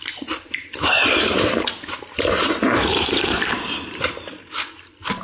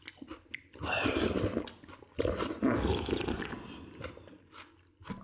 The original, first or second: second